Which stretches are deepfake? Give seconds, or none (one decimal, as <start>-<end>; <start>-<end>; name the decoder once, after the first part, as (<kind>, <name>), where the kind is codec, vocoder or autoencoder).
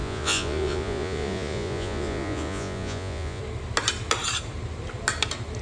0.0-3.4 (vocoder, Vocos)